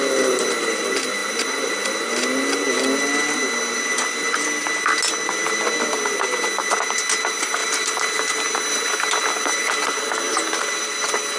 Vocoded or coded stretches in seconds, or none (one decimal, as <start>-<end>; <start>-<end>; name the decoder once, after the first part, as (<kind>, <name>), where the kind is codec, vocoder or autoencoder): none